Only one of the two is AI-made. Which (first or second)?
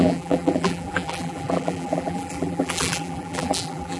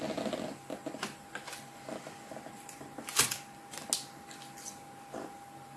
first